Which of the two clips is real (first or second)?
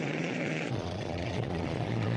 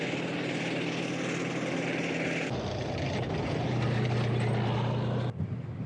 second